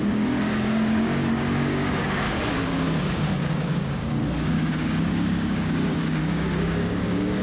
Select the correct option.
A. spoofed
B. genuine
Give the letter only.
A